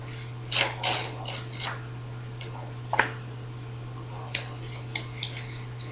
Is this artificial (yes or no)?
no